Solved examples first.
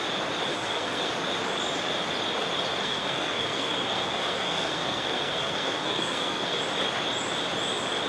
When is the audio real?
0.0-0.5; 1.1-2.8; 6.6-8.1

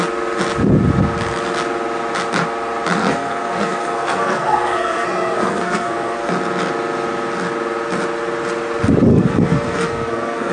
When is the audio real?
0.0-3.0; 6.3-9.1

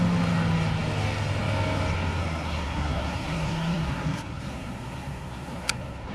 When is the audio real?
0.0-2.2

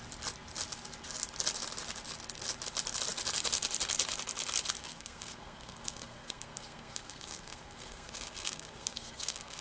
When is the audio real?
0.0-4.8

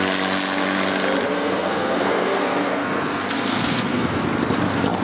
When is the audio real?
0.0-1.3; 4.2-5.0

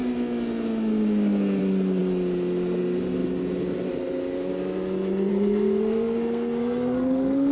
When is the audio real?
0.0-5.3

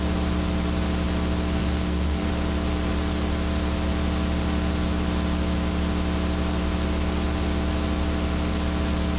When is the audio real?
0.0-1.6; 2.3-9.2

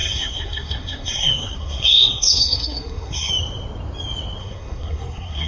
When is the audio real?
3.3-4.4